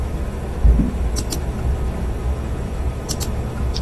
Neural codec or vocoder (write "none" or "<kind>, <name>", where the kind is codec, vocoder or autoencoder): autoencoder, DAC-VAE